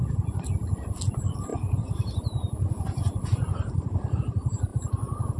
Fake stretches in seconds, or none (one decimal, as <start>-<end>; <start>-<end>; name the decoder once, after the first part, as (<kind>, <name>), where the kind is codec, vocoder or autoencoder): 1.5-4.2 (vocoder, BigVGAN v2); 4.7-5.4

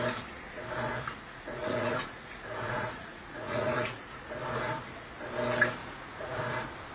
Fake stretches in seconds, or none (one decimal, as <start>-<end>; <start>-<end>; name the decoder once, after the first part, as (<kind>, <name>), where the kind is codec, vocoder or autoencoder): 1.1-4.2 (vocoder, Vocos); 5.8-6.4

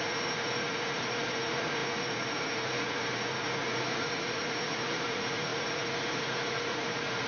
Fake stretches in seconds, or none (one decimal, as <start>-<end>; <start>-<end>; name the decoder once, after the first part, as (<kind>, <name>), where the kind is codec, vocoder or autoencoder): 0.0-7.3 (vocoder, Vocos)

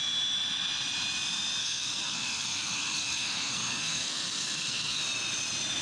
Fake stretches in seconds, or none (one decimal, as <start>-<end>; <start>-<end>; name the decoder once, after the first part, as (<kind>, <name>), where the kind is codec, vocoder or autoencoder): 1.6-5.0 (codec, SNAC)

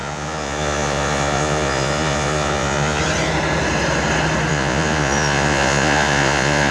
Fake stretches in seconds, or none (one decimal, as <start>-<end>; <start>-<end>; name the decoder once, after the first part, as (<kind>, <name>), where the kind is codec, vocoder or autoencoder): 0.0-3.0 (vocoder, Vocos); 4.5-6.7

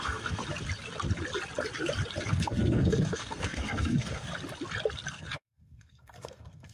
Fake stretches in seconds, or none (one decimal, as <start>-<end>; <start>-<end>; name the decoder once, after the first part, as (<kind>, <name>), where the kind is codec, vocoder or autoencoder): 0.0-0.4 (codec, SNAC); 2.3-4.3; 5.1-6.7

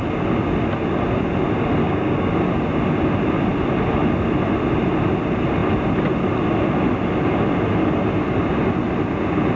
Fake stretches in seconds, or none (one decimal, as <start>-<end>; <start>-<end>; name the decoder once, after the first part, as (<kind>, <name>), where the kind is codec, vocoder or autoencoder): 1.8-2.3 (codec, DAC)